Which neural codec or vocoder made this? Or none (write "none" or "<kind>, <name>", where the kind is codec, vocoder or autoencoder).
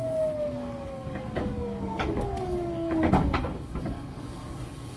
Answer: codec, DAC